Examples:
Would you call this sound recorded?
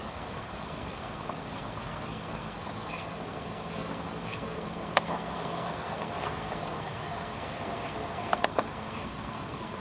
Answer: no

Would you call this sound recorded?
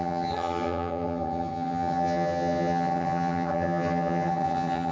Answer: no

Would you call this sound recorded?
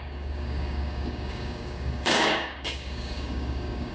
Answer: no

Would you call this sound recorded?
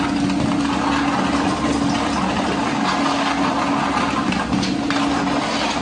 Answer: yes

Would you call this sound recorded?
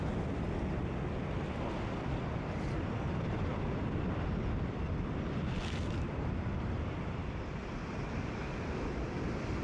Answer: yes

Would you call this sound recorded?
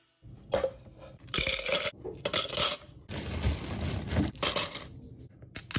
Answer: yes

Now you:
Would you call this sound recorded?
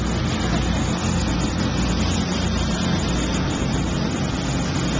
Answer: yes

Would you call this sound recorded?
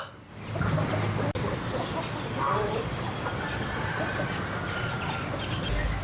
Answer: yes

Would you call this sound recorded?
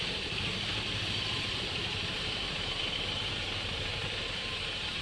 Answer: no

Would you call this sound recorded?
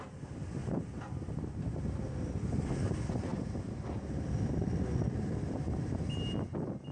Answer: yes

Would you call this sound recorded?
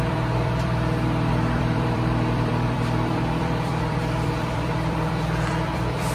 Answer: no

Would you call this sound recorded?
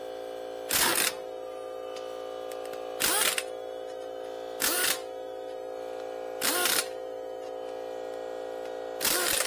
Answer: yes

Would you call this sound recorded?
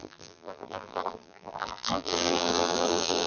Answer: no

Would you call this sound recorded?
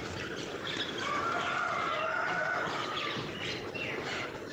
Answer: no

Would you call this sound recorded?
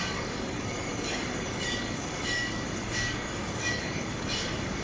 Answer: no